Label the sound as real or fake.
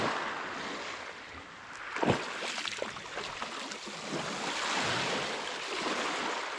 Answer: real